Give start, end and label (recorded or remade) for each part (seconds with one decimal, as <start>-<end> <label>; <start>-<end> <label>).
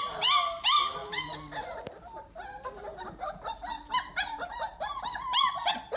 0.0-2.9 recorded; 2.9-5.4 remade; 5.4-6.0 recorded